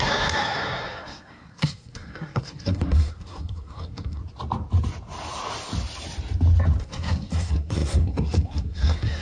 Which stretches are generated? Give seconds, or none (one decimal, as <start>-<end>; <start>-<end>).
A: 0.0-4.2; 6.8-9.2